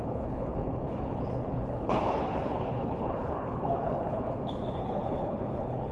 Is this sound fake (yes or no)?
yes